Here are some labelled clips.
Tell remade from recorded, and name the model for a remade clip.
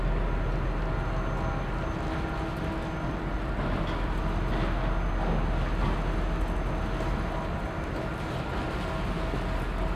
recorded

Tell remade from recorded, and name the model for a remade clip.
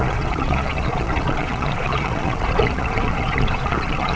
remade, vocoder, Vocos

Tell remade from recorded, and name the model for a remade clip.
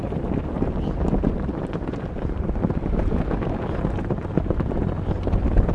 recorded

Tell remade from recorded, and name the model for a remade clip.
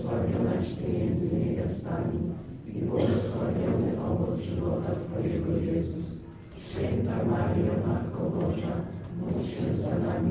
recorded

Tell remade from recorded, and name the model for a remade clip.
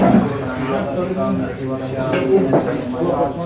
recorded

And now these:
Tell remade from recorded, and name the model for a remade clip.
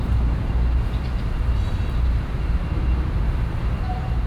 remade, vocoder, BigVGAN v2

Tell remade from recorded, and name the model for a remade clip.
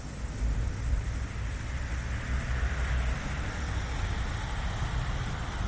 recorded